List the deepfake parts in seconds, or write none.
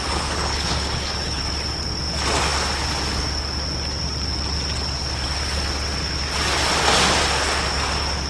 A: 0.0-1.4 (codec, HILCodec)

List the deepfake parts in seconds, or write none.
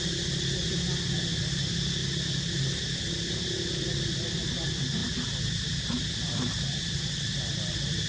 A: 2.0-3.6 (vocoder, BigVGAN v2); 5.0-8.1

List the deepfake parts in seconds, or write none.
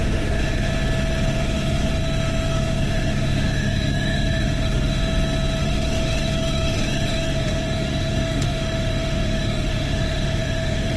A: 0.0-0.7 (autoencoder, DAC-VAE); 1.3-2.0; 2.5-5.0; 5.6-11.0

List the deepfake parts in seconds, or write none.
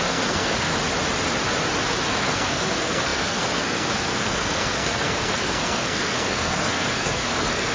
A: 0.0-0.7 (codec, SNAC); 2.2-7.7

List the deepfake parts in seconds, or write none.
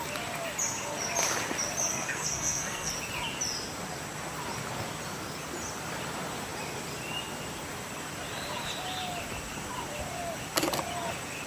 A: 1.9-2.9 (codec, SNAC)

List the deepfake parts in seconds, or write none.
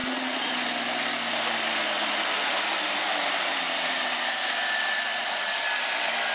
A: 0.0-0.5 (vocoder, Vocos)